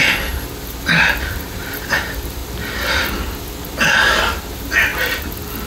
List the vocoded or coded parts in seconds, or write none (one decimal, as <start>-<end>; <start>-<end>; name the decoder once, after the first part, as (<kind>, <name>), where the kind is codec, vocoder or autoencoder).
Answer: 0.0-2.4 (vocoder, BigVGAN v2); 4.5-4.9